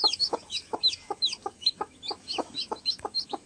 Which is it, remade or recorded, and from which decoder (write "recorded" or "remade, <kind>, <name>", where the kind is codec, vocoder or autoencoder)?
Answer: remade, autoencoder, DAC-VAE